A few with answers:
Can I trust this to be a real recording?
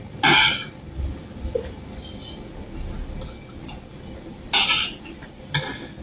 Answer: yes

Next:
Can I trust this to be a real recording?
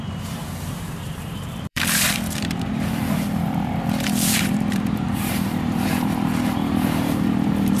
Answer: no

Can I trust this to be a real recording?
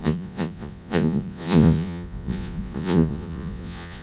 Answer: no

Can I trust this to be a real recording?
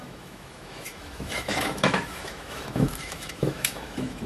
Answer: no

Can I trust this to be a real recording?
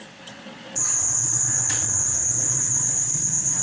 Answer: no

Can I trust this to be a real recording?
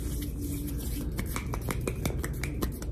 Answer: yes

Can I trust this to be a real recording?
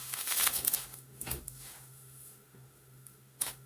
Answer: no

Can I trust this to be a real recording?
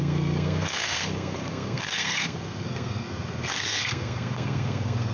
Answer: no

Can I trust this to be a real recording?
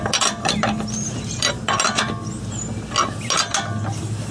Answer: yes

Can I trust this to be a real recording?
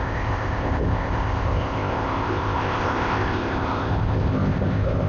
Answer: no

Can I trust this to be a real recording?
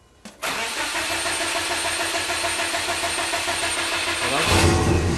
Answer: yes